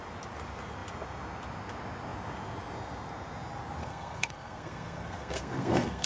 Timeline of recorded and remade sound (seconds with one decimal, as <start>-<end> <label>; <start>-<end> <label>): 0.0-3.8 recorded; 3.8-6.1 remade

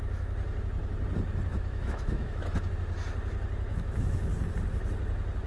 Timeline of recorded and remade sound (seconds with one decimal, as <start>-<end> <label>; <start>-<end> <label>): 0.0-1.5 recorded; 1.5-2.7 remade; 2.7-3.7 recorded; 3.7-4.3 remade; 4.3-5.5 recorded